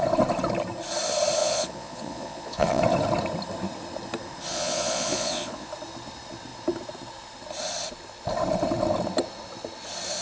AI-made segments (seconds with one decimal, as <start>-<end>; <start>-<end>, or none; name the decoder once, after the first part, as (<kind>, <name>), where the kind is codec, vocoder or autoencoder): 1.4-2.8 (vocoder, Vocos); 4.5-5.7